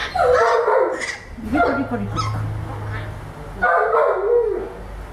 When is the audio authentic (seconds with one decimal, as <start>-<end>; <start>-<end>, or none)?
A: 0.0-5.1